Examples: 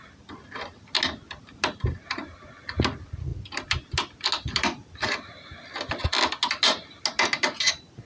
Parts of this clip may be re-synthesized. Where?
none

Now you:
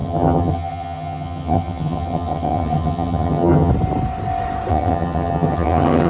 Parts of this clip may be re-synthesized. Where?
0.0-3.7 (vocoder, HiFi-GAN); 4.7-6.1

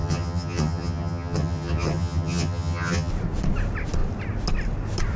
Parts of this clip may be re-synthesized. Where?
0.0-3.1 (vocoder, HiFi-GAN)

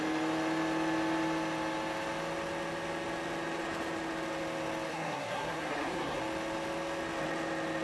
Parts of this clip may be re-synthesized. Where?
4.9-6.2 (codec, SNAC)

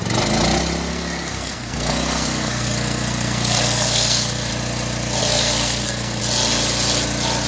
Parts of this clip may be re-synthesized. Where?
0.9-4.5 (codec, SNAC); 5.2-6.2

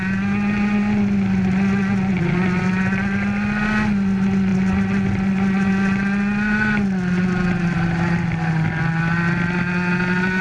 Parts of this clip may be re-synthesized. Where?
none